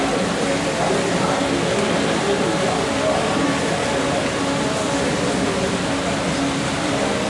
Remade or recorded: recorded